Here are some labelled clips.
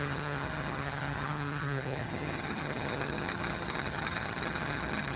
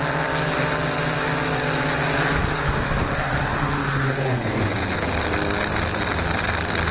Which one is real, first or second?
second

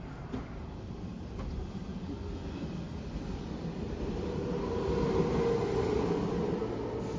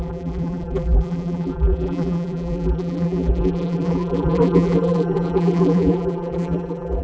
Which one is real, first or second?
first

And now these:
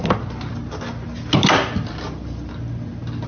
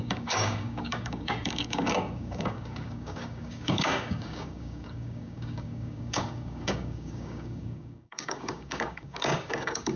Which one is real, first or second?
first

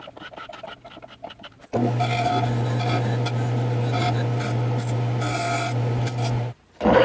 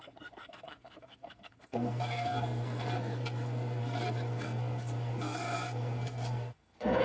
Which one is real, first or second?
first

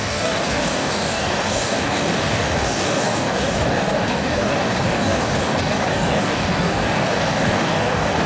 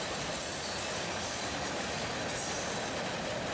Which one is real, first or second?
second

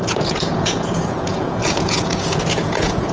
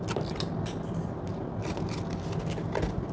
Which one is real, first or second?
second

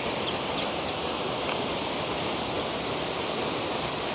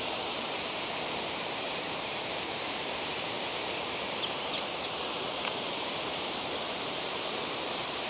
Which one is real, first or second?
first